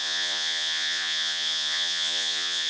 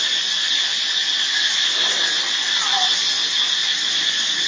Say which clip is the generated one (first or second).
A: first